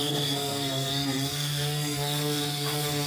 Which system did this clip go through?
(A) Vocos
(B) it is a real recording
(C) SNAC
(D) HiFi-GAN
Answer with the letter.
C